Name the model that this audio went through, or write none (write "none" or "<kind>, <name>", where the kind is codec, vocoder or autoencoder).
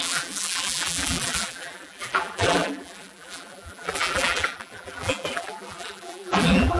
vocoder, BigVGAN v2